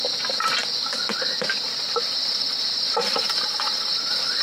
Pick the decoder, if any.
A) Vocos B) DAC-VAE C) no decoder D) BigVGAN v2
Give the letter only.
C